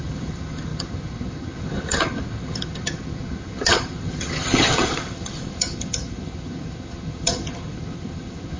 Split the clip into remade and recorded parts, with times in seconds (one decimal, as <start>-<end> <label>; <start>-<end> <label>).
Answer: 0.0-8.6 remade